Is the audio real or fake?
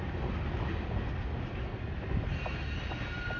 real